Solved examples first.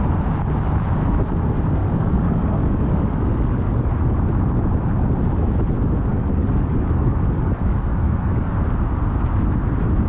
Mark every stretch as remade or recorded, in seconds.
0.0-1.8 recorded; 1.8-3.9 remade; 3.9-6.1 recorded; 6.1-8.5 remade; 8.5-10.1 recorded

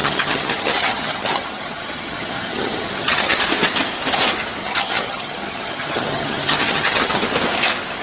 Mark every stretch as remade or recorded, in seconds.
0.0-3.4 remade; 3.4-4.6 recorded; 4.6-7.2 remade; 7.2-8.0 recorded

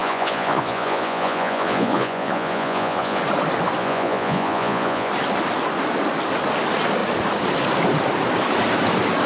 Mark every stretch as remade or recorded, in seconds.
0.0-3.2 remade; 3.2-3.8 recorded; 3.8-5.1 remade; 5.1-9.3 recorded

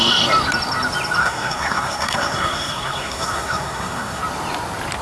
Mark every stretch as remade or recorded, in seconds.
0.0-1.2 recorded; 1.2-4.2 remade; 4.2-5.0 recorded

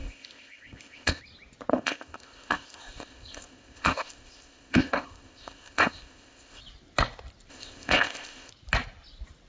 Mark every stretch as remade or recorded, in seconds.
0.0-1.2 remade; 1.2-1.7 recorded; 1.7-6.6 remade; 6.6-7.5 recorded; 7.5-8.5 remade; 8.5-9.5 recorded

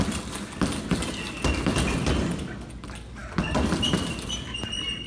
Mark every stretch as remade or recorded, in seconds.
0.0-5.1 recorded